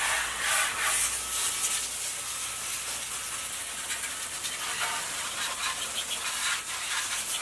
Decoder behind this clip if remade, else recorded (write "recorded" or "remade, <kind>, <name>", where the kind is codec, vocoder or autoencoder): recorded